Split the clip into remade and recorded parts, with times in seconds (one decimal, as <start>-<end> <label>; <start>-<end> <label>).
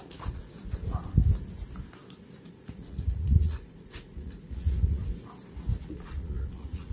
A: 0.0-0.6 remade; 0.6-2.5 recorded; 2.5-5.0 remade; 5.0-5.8 recorded; 5.8-6.9 remade